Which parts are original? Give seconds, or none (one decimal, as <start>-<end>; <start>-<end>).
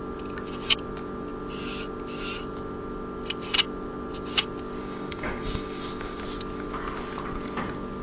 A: 0.0-4.8; 6.2-8.0